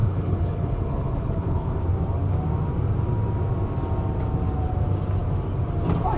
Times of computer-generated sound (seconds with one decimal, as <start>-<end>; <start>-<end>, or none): 0.0-1.8